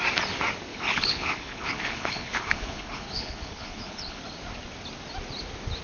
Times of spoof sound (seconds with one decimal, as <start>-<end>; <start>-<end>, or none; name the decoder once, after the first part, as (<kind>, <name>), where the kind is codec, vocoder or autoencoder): 0.7-4.2 (codec, HILCodec)